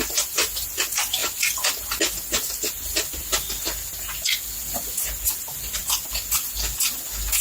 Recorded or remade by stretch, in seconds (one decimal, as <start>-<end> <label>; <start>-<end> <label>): 0.0-7.4 recorded